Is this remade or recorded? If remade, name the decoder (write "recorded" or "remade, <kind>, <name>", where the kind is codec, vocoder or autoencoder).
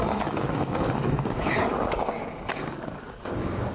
remade, codec, DAC